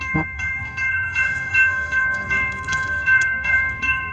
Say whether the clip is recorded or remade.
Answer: remade